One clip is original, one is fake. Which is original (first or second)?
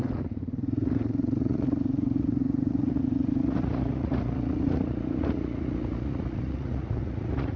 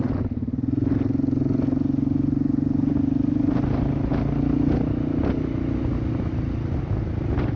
second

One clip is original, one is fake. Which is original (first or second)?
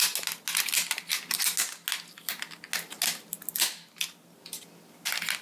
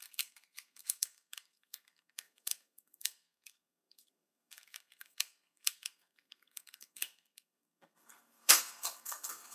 first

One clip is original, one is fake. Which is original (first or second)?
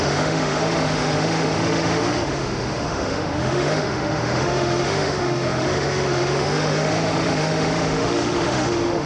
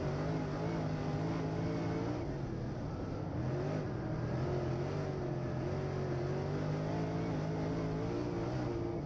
second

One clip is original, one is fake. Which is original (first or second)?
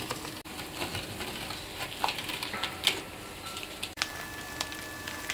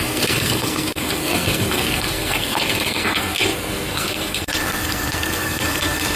first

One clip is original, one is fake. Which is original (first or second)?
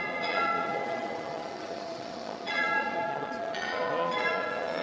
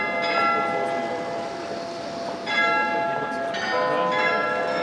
second